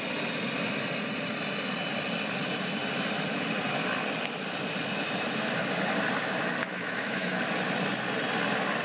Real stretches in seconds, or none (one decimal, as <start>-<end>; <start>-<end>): 0.0-6.6; 7.4-8.8